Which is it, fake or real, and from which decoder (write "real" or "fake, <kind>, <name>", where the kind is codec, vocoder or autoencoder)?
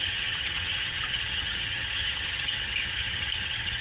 fake, vocoder, HiFi-GAN